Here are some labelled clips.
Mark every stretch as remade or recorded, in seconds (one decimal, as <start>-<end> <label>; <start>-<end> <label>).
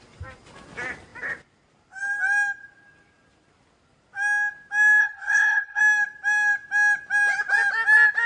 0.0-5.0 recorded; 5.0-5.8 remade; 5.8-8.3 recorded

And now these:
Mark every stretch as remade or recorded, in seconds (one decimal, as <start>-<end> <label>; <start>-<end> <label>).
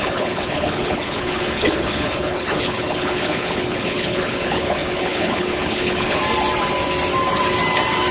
0.0-6.2 remade; 6.2-8.1 recorded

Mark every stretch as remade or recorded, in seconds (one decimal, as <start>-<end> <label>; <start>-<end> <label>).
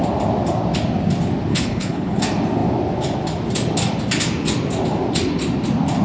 0.0-1.5 recorded; 1.5-2.2 remade; 2.2-6.0 recorded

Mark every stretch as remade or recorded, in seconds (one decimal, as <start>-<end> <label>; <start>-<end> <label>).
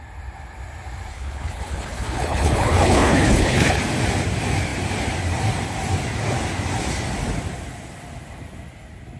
0.0-1.1 recorded; 1.1-3.8 remade; 3.8-9.2 recorded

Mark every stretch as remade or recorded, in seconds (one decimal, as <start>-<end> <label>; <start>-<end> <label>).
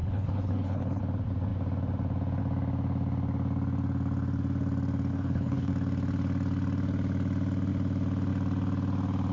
0.0-1.0 remade; 1.0-5.1 recorded; 5.1-5.7 remade; 5.7-9.3 recorded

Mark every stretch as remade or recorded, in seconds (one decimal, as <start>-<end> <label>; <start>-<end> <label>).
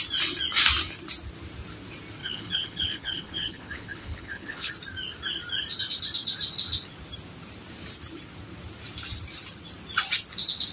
0.0-2.2 recorded; 2.2-4.7 remade; 4.7-10.7 recorded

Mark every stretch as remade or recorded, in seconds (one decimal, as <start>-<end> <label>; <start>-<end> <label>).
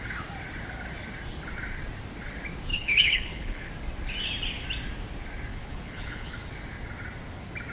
0.0-2.7 recorded; 2.7-3.7 remade; 3.7-5.5 recorded; 5.5-6.3 remade; 6.3-7.7 recorded